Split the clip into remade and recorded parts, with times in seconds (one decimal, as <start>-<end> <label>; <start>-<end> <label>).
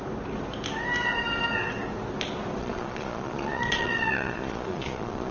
0.0-2.6 recorded; 2.6-5.3 remade